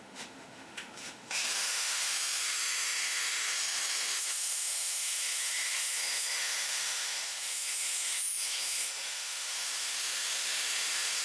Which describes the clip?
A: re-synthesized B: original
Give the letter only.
A